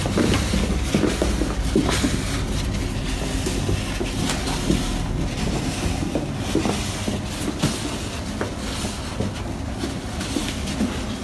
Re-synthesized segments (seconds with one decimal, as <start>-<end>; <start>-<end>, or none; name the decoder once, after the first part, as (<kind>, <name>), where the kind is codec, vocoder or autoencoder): none